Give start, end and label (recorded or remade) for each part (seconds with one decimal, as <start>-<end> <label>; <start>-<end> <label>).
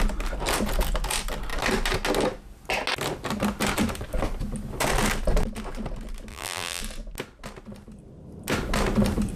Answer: 0.0-6.3 recorded; 6.3-6.8 remade; 6.8-9.4 recorded